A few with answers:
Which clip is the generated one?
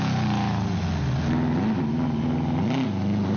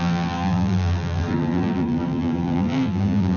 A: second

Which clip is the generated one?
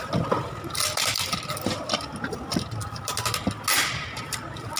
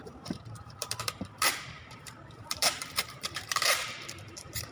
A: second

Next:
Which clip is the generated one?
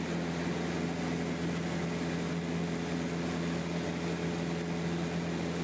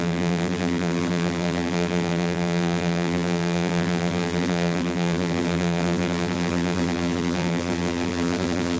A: second